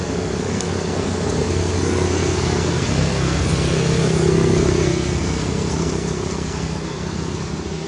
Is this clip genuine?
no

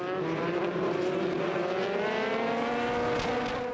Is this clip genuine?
yes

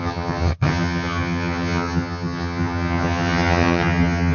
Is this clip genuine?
no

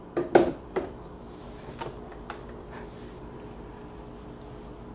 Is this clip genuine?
yes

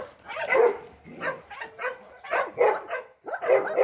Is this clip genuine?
yes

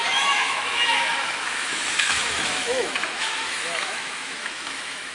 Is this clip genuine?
no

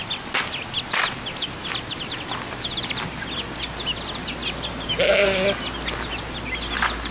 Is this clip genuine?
yes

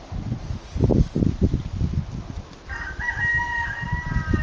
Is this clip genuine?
yes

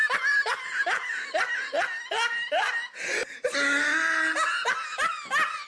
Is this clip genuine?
yes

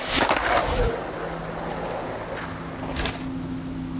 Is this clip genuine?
yes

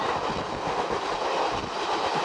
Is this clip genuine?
yes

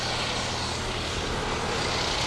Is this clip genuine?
yes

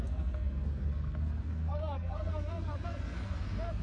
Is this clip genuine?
no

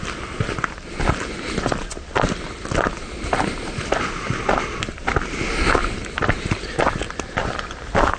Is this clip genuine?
yes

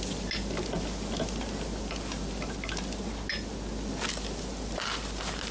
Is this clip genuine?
yes